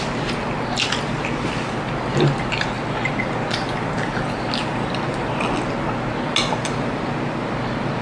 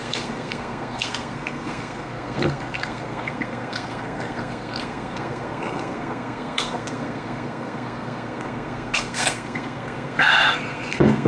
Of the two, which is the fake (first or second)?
second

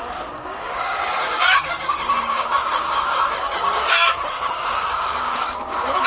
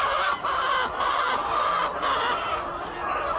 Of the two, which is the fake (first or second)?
first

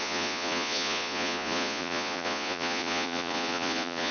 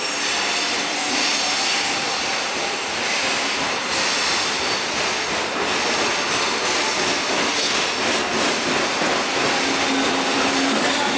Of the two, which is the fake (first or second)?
first